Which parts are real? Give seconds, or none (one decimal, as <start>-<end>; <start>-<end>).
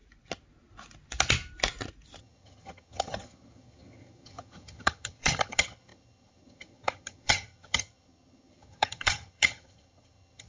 0.0-2.2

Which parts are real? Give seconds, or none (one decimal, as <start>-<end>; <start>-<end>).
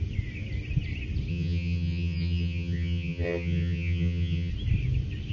0.0-1.3; 4.5-5.3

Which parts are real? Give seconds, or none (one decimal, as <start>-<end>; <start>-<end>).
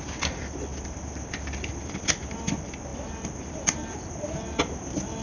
0.0-5.2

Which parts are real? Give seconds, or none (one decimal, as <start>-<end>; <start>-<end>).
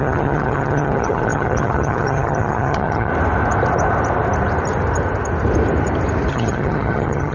3.1-6.3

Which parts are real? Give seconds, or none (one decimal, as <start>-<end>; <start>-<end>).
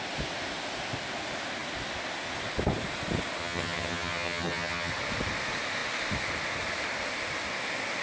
0.0-3.4; 4.9-8.0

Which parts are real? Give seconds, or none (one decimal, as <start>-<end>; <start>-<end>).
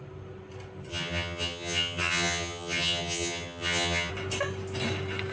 0.0-0.9; 4.1-5.3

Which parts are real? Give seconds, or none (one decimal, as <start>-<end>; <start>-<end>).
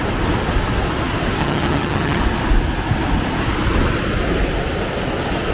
0.0-1.4; 2.2-5.5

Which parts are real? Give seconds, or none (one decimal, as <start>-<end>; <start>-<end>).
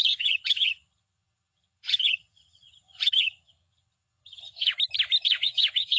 4.7-5.2